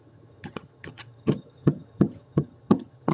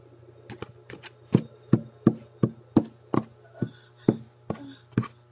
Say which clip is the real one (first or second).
second